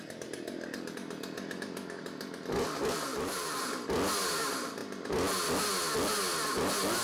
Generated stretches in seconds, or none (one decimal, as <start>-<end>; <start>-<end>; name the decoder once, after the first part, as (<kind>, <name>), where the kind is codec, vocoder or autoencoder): 3.1-3.7 (vocoder, BigVGAN v2)